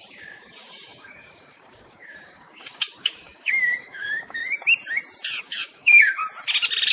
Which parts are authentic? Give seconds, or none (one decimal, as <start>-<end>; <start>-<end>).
4.4-5.4; 6.2-6.9